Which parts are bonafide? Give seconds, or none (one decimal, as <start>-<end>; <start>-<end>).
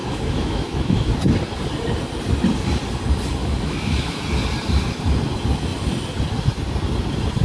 1.1-3.4; 4.2-7.4